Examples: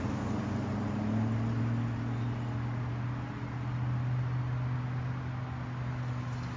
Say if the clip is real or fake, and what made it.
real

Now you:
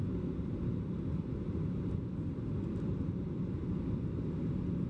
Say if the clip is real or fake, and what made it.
real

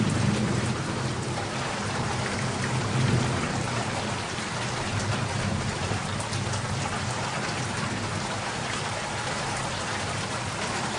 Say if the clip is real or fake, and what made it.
fake, vocoder, BigVGAN v2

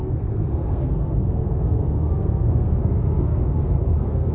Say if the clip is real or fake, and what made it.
fake, codec, SNAC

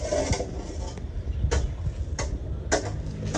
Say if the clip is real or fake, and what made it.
real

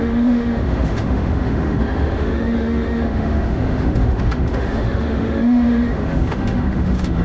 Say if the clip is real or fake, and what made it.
fake, autoencoder, DAC-VAE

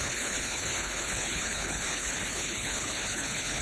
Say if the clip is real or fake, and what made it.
fake, codec, HILCodec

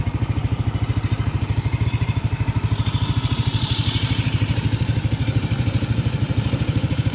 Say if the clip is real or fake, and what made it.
fake, vocoder, BigVGAN v2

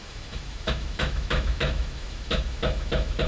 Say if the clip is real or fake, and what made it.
fake, autoencoder, DAC-VAE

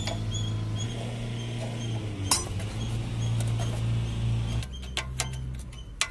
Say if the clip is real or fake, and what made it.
real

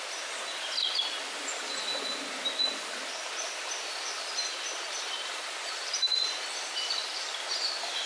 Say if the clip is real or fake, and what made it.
real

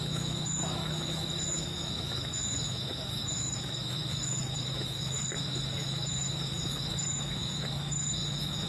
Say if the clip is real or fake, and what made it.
fake, autoencoder, DAC-VAE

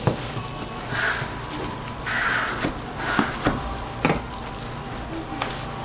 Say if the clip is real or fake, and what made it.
real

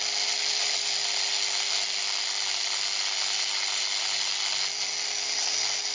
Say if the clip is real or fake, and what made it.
real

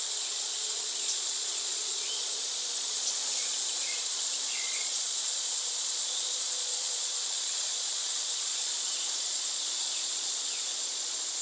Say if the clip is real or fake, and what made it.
fake, vocoder, Vocos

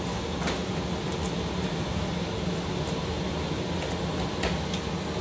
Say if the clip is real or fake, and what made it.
real